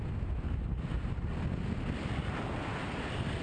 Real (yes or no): yes